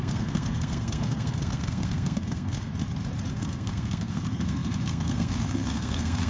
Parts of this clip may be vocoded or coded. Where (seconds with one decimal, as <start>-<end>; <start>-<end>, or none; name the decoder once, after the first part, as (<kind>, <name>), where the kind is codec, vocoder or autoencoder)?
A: 0.0-2.7 (codec, SNAC); 3.3-6.3